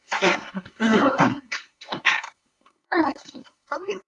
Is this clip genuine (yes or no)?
no